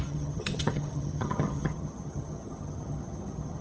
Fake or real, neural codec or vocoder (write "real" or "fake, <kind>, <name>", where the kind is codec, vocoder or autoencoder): fake, vocoder, HiFi-GAN